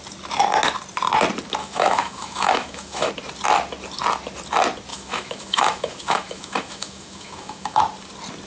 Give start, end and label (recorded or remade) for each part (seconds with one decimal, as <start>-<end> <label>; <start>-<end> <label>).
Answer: 0.0-1.6 recorded; 1.6-3.1 remade; 3.1-4.9 recorded; 4.9-7.8 remade; 7.8-8.5 recorded